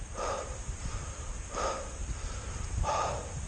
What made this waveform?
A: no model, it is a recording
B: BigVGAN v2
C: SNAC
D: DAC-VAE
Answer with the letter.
B